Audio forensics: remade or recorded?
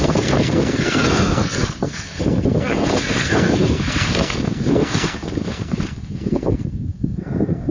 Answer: remade